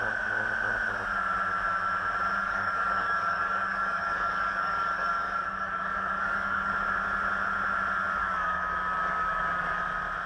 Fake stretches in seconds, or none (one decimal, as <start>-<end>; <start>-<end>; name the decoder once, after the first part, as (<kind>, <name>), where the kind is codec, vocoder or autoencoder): 2.4-6.7 (codec, DAC); 8.2-9.8